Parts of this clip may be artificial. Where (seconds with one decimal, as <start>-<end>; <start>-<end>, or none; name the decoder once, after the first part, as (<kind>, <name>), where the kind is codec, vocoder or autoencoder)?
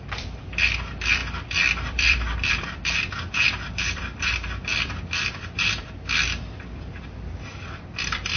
0.0-8.4 (vocoder, BigVGAN v2)